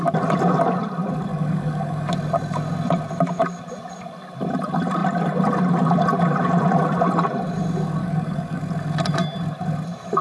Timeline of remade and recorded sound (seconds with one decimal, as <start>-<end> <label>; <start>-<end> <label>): 0.0-1.3 recorded; 1.3-2.1 remade; 2.1-8.0 recorded; 8.0-8.6 remade; 8.6-10.2 recorded